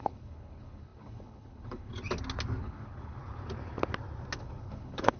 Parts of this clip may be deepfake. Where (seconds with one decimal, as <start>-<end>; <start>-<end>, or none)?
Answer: 0.0-1.9; 2.6-3.2; 4.4-5.2